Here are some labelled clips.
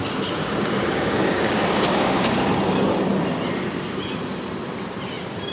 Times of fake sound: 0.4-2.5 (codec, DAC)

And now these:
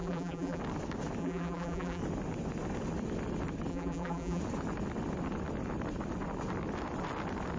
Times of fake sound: 0.0-0.6 (vocoder, BigVGAN v2); 1.2-2.0; 3.7-4.4

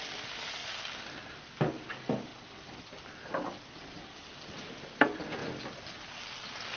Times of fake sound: none

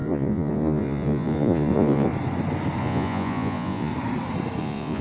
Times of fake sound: 0.0-2.1 (vocoder, Vocos); 2.8-3.9; 4.6-5.0

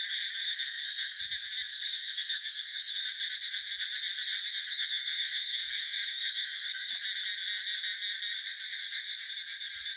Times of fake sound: 0.5-1.2 (codec, SNAC); 1.7-2.9; 4.7-6.9

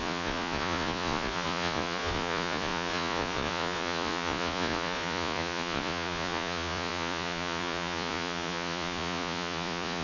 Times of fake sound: 0.0-10.0 (vocoder, Vocos)

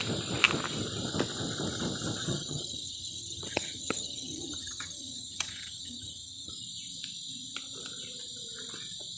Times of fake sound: 2.2-6.5 (vocoder, HiFi-GAN)

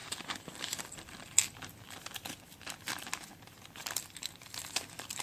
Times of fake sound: 0.0-1.4 (vocoder, BigVGAN v2); 3.8-4.3